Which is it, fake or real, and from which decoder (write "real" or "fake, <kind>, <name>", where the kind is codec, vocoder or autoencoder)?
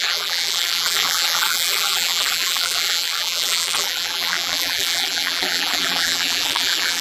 fake, vocoder, BigVGAN v2